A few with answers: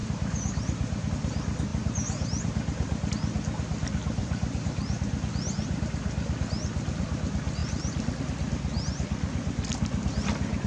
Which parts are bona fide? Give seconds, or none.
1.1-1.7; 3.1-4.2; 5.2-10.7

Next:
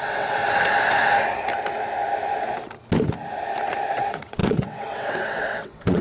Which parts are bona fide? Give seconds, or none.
0.4-4.0

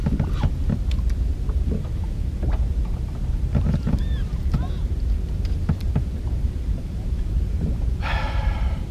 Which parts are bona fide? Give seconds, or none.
0.0-1.5; 4.4-5.3

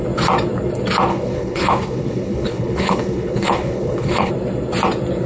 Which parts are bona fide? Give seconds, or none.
0.0-1.1; 4.3-5.3

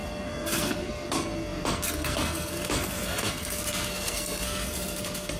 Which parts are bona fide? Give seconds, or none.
none

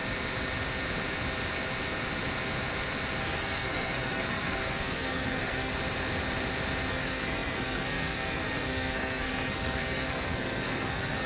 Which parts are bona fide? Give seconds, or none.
0.0-3.2; 5.7-6.9